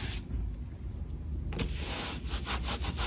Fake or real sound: real